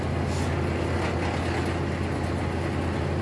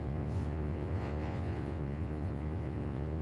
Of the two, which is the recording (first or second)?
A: first